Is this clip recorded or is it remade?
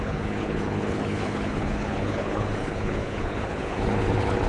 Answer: remade